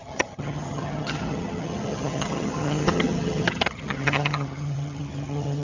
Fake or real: fake